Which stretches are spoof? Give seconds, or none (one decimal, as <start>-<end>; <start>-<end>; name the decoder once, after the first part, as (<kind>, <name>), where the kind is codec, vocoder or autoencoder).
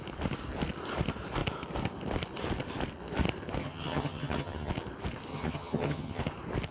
3.6-4.7 (vocoder, HiFi-GAN); 5.3-6.2